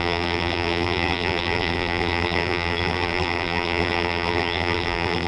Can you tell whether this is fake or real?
fake